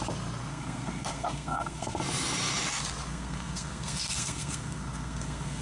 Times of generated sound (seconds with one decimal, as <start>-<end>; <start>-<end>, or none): 0.5-2.0; 3.1-5.6